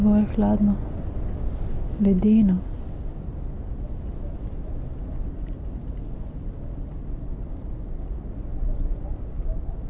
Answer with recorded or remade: recorded